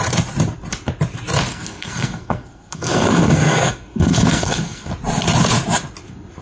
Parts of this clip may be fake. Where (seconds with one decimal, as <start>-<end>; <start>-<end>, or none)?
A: 1.5-4.9